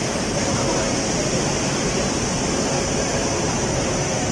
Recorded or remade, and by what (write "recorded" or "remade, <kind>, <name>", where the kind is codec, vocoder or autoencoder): recorded